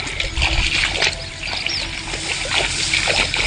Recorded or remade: recorded